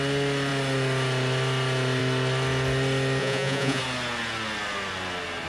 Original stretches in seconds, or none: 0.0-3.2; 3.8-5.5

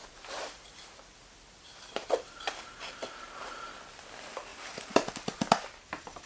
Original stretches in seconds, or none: 2.4-6.3

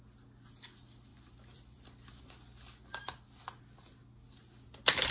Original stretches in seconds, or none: 0.0-1.1; 2.2-2.9; 3.4-5.1

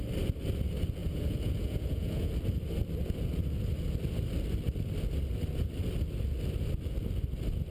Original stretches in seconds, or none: 0.0-1.0; 2.3-7.7

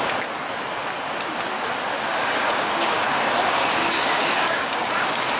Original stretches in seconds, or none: 0.0-2.1; 3.0-3.8; 4.9-5.4

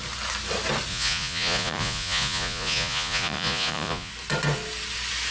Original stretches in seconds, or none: 0.0-0.9; 4.1-5.3